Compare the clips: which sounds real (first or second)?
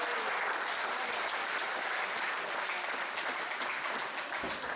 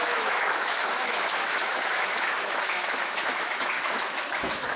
first